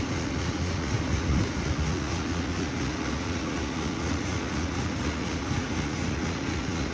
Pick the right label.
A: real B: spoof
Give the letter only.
B